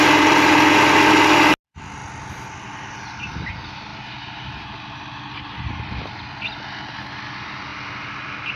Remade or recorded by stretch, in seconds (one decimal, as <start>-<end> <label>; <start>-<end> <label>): 0.0-8.6 recorded